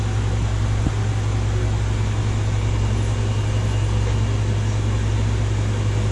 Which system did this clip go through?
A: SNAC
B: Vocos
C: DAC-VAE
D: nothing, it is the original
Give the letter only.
D